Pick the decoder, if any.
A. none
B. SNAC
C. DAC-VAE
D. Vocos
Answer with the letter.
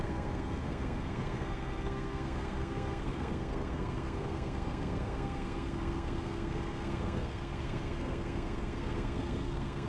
B